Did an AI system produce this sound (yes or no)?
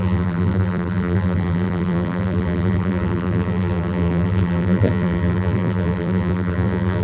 yes